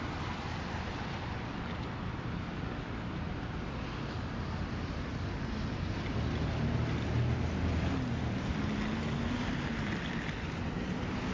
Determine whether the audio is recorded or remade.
recorded